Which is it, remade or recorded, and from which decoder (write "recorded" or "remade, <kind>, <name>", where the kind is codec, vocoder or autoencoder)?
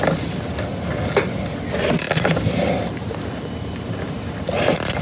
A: recorded